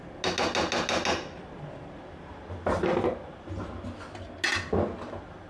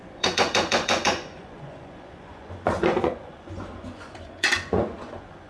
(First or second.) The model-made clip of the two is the second